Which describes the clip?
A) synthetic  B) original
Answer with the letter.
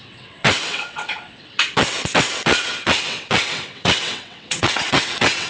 A